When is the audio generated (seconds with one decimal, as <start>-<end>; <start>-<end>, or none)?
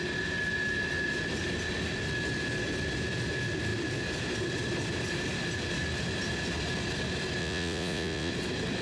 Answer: 7.4-8.3